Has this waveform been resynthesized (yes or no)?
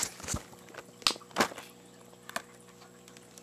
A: no